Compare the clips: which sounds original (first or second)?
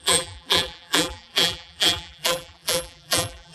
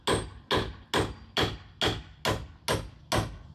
second